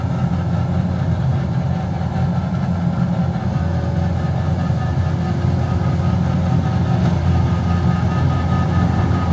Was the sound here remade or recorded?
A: recorded